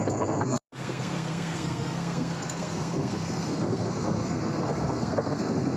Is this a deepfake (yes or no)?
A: yes